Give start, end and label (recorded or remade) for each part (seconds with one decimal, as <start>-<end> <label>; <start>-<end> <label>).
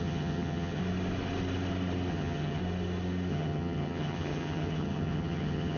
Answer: 0.0-0.8 remade; 0.8-2.1 recorded; 2.1-2.6 remade; 2.6-3.3 recorded; 3.3-5.8 remade